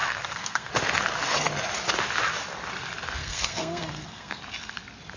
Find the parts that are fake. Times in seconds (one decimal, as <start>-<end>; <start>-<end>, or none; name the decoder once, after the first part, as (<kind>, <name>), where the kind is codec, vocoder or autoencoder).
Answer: 0.0-0.7 (codec, SNAC); 3.2-4.4